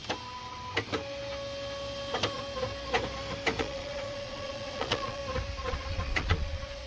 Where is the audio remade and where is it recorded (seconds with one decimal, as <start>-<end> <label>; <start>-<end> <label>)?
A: 0.0-3.6 recorded; 3.6-5.2 remade; 5.2-5.7 recorded; 5.7-6.9 remade